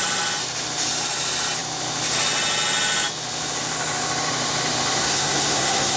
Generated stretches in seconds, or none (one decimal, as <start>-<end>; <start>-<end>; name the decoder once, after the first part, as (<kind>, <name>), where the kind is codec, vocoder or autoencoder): 5.0-6.0 (codec, SNAC)